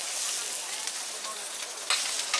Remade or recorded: recorded